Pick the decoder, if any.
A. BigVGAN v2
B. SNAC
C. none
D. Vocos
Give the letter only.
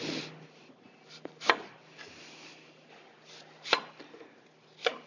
C